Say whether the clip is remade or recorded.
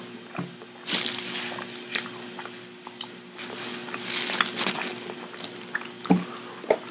recorded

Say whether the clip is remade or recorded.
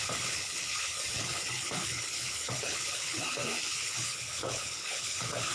remade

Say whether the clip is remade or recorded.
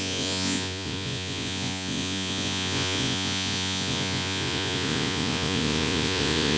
remade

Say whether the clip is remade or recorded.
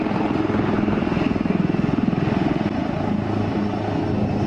recorded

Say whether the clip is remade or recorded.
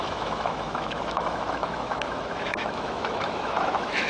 remade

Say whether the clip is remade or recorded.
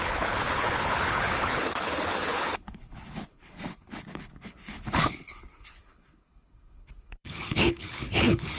remade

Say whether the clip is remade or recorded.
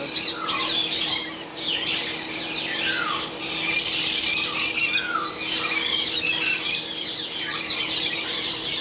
remade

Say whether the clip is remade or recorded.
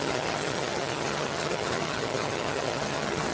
remade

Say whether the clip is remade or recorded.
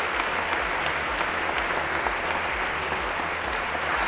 recorded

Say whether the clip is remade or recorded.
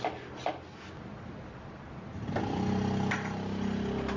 recorded